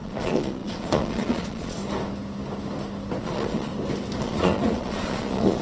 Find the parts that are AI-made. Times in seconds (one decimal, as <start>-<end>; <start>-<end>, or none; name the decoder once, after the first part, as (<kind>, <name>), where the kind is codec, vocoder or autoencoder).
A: 0.0-1.8 (vocoder, Vocos); 3.2-3.7; 4.2-5.6

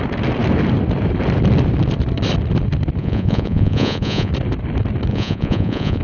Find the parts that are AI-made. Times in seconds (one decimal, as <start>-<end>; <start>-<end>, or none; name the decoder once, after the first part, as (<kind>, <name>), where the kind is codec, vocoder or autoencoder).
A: 3.0-4.3 (vocoder, Vocos); 5.1-6.0

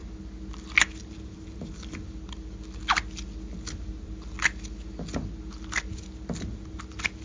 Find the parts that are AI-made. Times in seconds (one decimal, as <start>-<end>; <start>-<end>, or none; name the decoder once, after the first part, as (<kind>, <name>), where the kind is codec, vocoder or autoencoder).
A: none

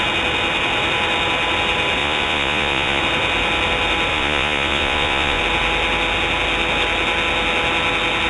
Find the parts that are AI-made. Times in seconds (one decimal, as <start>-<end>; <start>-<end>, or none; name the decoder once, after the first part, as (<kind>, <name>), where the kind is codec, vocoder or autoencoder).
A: 2.0-3.0 (vocoder, Vocos); 4.1-5.4

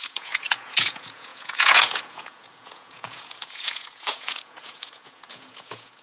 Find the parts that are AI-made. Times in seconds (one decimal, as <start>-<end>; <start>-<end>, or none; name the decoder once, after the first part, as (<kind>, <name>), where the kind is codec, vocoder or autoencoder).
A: 0.0-6.0 (vocoder, Vocos)

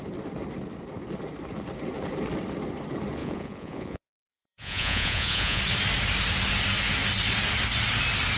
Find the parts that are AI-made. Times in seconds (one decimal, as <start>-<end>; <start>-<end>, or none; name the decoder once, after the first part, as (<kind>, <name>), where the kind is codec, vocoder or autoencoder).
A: 3.2-5.6 (vocoder, Vocos)